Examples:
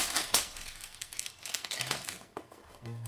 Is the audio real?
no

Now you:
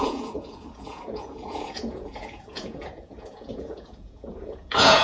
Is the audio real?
no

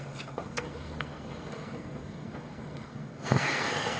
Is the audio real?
no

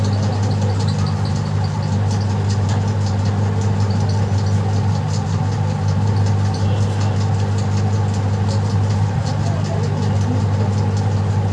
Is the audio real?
yes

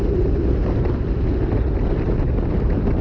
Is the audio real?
yes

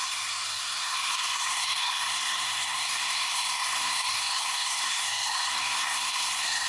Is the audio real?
no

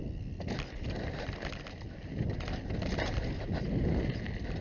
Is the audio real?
yes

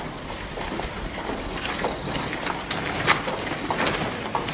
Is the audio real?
yes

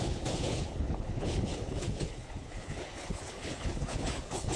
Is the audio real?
no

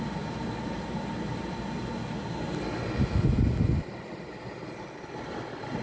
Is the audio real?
yes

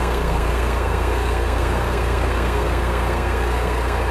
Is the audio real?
no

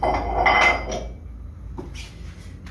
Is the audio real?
yes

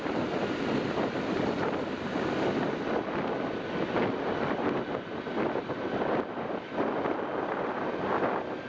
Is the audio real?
yes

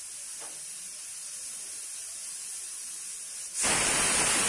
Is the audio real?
yes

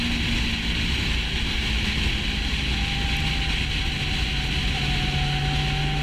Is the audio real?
yes